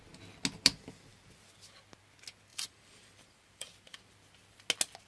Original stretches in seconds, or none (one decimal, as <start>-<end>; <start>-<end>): 0.0-2.5; 4.1-5.1